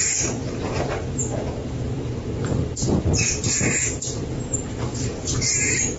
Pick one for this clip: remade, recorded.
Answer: recorded